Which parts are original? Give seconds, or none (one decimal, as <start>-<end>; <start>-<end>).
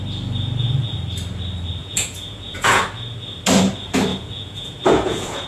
0.0-1.8; 2.8-4.1